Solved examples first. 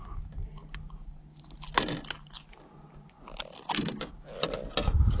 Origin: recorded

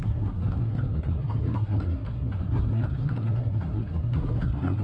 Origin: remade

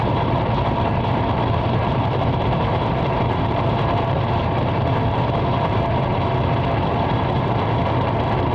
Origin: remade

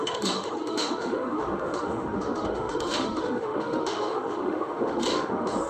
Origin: remade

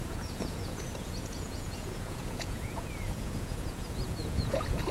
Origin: remade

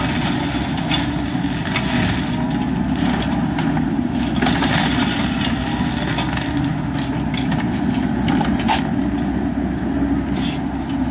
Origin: recorded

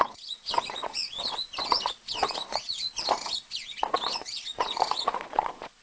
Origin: remade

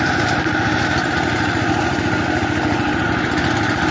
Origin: recorded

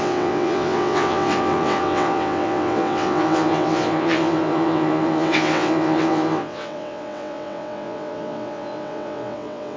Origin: remade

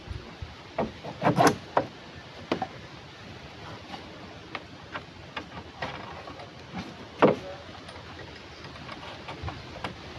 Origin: recorded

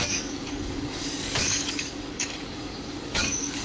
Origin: remade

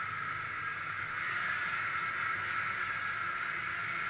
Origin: recorded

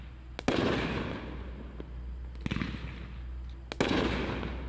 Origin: recorded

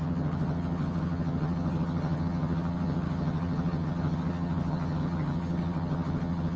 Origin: remade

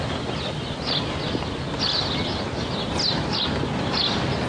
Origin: recorded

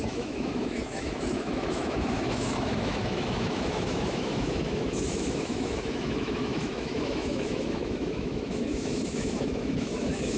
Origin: remade